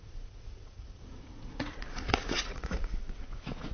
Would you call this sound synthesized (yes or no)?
yes